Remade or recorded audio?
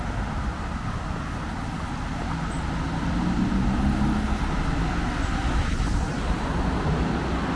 recorded